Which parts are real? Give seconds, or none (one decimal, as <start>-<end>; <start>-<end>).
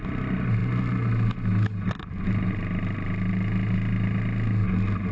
0.0-5.1